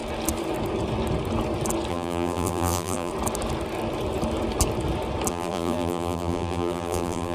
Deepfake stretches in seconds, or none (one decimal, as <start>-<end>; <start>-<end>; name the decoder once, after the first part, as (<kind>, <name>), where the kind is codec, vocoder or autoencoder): 1.9-3.1 (vocoder, BigVGAN v2); 5.3-7.3